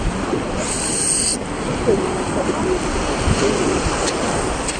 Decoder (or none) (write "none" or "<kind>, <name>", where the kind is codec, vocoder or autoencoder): none